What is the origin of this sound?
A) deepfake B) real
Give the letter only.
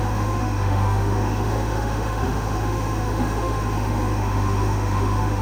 A